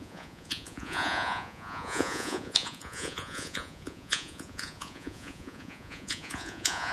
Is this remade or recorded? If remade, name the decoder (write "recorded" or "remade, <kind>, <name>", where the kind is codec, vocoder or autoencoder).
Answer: remade, vocoder, Vocos